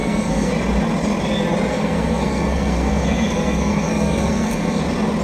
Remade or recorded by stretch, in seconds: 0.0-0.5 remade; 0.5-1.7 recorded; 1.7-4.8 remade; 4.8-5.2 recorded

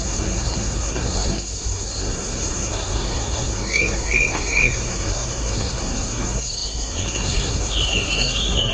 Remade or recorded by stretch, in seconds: 0.0-8.7 remade

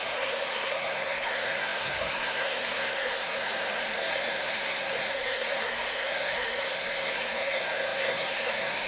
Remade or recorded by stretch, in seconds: 0.0-8.9 remade

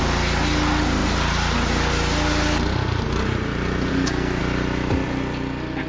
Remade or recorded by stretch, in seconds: 0.0-3.9 recorded; 3.9-4.4 remade; 4.4-5.9 recorded

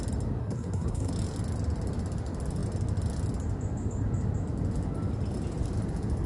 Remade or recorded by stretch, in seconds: 0.0-0.4 recorded; 0.4-1.1 remade; 1.1-6.3 recorded

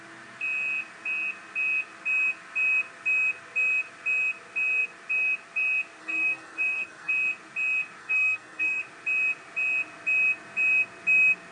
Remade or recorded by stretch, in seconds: 0.0-6.0 recorded; 6.0-7.1 remade; 7.1-8.0 recorded; 8.0-8.8 remade; 8.8-11.5 recorded